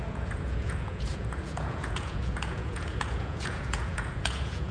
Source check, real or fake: fake